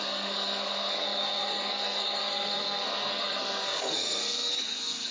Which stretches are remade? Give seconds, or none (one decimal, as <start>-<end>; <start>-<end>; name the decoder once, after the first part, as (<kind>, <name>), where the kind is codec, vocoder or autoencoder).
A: 0.0-5.1 (codec, SNAC)